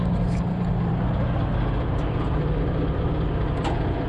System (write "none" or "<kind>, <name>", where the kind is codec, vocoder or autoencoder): none